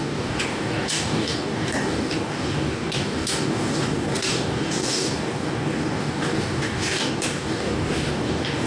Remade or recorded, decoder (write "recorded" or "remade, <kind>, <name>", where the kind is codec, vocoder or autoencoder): remade, codec, DAC